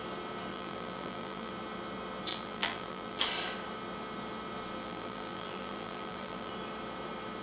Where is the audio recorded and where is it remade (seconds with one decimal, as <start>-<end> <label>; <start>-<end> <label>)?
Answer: 0.0-0.5 recorded; 0.5-1.5 remade; 1.5-2.3 recorded; 2.3-3.2 remade; 3.2-4.8 recorded; 4.8-6.5 remade; 6.5-7.4 recorded